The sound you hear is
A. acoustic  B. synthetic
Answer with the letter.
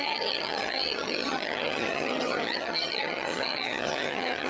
B